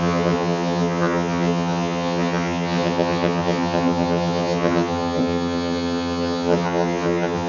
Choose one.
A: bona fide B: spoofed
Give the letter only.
B